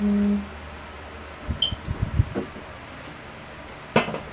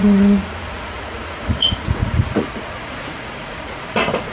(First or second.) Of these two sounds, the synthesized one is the second